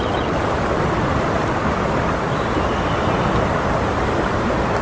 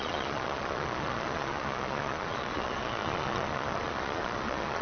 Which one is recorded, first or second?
first